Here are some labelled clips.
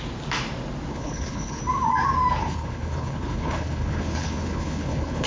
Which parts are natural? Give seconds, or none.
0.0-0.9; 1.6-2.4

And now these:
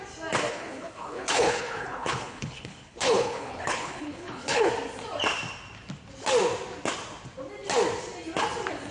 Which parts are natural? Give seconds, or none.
0.0-0.5; 4.7-8.9

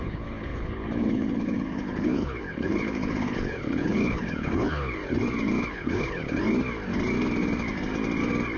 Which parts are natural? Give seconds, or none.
5.0-5.7; 6.2-8.6

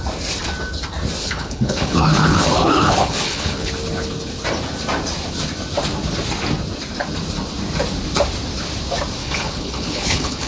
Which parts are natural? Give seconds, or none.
0.0-1.2; 3.7-9.2

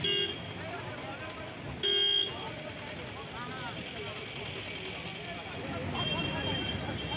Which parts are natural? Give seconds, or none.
0.0-7.2

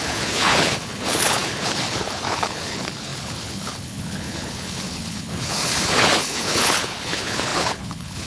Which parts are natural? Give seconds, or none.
none

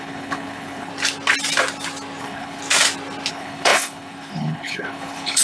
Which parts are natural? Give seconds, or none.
0.9-2.2; 2.6-3.3

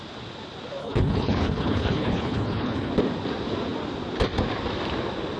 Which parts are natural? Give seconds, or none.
0.0-0.8; 2.9-5.4